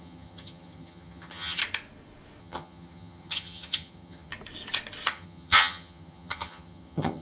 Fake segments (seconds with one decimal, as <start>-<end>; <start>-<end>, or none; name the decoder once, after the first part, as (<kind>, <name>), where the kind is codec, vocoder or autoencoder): 0.0-1.6 (vocoder, HiFi-GAN); 2.4-4.3; 5.1-7.2